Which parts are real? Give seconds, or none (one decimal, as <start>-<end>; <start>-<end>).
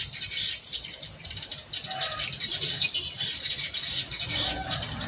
1.5-4.4